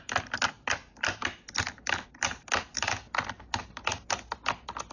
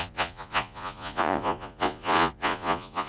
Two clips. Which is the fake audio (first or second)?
second